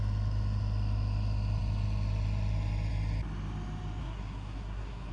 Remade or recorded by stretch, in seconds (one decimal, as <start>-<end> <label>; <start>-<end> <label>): 0.0-4.0 recorded; 4.0-5.1 remade